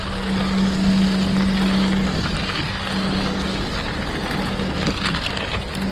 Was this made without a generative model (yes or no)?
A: yes